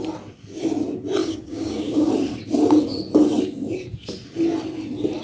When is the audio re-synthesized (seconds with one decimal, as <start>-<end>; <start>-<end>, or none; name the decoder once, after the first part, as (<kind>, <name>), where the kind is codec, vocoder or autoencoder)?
1.2-2.1 (codec, DAC)